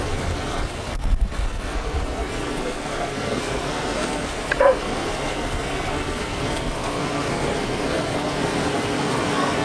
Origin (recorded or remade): remade